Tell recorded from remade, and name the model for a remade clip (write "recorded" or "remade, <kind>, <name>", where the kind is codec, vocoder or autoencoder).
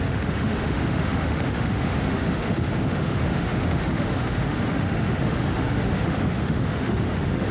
remade, autoencoder, DAC-VAE